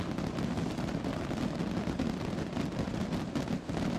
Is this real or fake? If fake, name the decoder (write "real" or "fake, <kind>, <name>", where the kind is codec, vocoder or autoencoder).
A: real